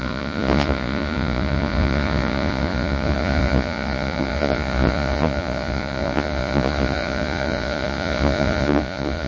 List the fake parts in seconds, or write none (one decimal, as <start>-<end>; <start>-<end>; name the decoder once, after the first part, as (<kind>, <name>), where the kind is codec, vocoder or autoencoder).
0.0-9.3 (vocoder, Vocos)